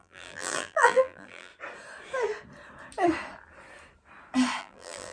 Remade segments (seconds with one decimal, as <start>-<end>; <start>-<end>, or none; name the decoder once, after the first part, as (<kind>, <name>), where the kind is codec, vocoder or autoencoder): 0.0-1.5 (vocoder, BigVGAN v2); 4.6-5.1